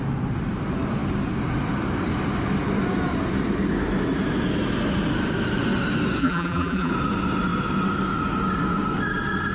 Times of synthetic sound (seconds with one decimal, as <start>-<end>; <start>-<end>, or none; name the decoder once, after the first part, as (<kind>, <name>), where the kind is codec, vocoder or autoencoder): 6.2-6.9 (vocoder, BigVGAN v2)